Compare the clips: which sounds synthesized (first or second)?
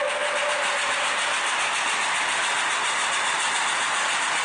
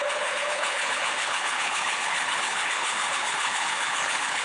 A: second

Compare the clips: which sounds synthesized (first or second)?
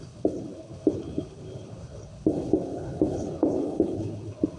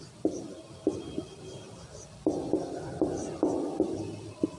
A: first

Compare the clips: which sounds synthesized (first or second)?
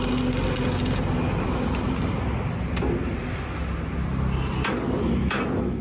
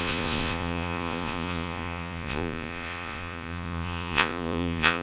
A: second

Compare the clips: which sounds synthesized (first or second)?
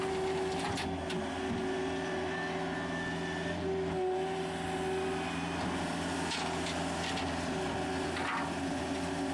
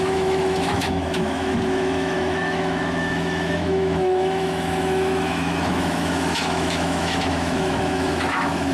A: second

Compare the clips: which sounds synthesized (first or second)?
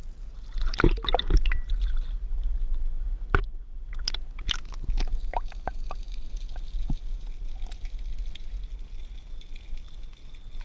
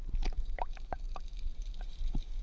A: second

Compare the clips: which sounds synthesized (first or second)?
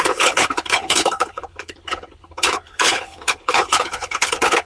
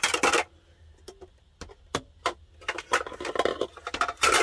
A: first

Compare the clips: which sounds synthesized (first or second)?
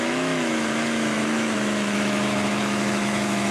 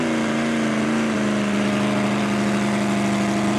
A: first